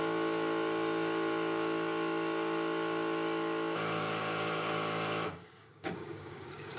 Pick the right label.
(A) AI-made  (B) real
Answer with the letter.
A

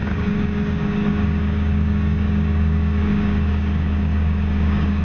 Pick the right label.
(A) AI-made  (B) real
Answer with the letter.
A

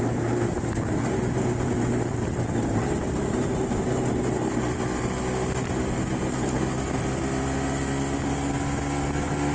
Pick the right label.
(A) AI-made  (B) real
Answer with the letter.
B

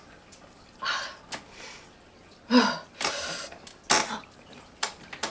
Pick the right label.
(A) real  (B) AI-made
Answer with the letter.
A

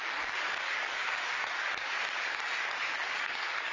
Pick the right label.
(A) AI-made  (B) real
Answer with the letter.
A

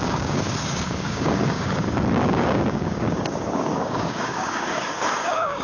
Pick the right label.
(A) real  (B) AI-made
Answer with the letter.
B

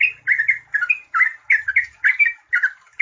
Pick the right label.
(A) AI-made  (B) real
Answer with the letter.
B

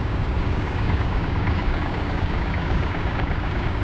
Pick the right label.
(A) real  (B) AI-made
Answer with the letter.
B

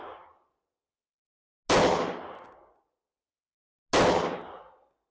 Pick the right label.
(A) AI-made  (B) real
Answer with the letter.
B